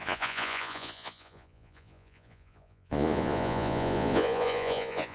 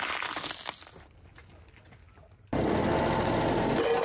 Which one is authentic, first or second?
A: second